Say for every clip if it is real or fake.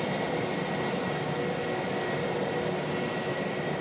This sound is real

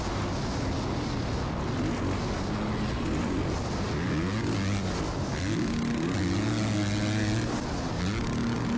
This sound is real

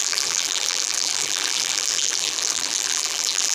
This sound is fake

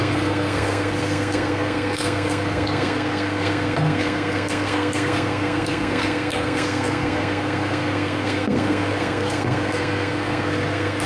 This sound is fake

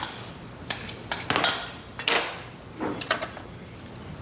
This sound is real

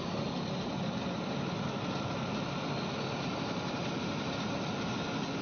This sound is real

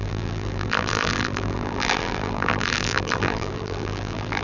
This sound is fake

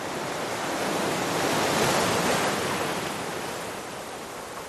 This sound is real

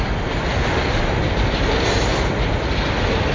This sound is real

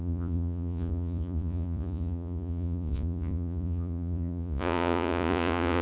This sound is fake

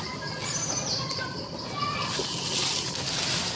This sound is real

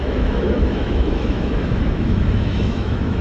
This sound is fake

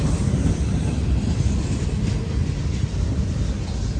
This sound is real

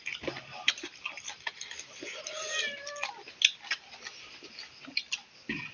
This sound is real